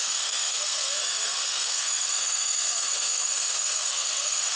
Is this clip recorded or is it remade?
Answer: remade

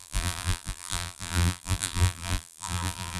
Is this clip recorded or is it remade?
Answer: remade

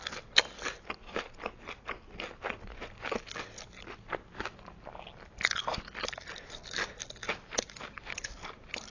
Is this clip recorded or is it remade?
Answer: recorded